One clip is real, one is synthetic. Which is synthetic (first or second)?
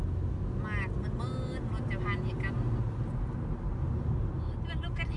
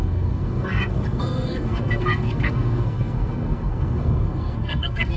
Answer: second